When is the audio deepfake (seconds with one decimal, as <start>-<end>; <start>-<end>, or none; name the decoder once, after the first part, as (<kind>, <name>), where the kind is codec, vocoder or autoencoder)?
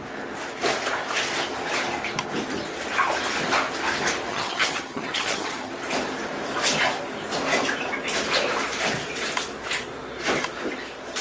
4.3-5.7 (vocoder, HiFi-GAN)